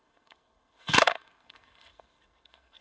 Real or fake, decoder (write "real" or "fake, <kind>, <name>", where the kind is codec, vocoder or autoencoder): fake, codec, SNAC